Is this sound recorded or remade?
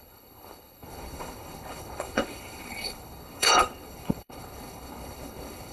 remade